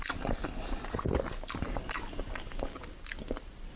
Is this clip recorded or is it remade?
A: recorded